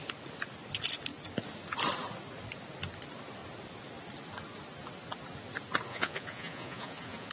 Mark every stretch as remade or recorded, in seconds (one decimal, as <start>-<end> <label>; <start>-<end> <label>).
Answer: 0.0-5.9 recorded; 5.9-7.3 remade